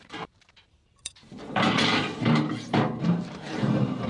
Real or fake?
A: fake